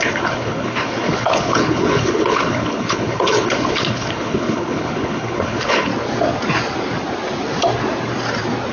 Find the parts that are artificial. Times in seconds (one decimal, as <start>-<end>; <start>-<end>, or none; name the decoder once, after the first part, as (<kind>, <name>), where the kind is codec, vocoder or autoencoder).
0.0-5.9 (codec, HILCodec)

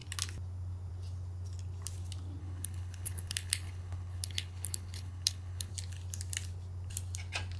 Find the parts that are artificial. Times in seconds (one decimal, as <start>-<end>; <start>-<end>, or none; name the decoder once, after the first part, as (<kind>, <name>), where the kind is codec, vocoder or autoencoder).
2.4-5.7 (codec, HILCodec)

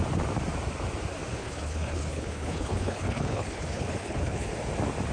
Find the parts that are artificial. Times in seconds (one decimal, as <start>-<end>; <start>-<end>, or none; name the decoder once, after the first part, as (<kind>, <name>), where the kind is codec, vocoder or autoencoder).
1.4-4.5 (codec, HILCodec)